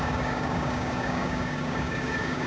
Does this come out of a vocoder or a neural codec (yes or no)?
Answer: yes